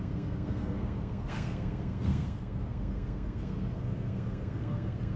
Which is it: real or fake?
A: fake